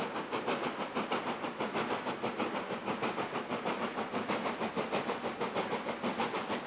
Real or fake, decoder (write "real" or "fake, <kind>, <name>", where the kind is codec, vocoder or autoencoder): real